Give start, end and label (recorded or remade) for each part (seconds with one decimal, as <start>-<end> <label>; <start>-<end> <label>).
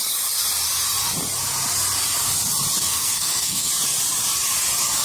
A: 0.0-2.8 recorded; 2.8-3.7 remade; 3.7-5.0 recorded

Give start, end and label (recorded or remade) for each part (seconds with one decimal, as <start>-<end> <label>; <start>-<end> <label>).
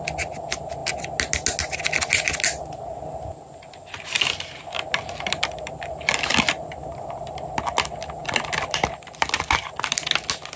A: 0.0-10.6 recorded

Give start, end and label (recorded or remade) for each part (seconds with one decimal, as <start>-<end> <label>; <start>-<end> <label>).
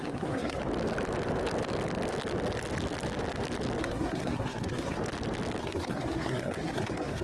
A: 0.0-0.6 remade; 0.6-3.8 recorded; 3.8-5.0 remade; 5.0-5.6 recorded; 5.6-7.2 remade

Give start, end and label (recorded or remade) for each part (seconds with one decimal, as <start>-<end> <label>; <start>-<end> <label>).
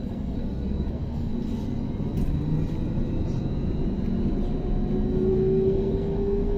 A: 0.0-1.3 remade; 1.3-5.3 recorded; 5.3-6.6 remade